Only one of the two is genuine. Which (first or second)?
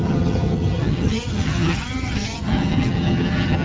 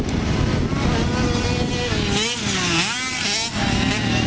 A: second